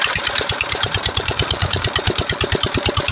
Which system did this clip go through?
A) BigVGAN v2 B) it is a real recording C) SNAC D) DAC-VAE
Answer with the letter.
A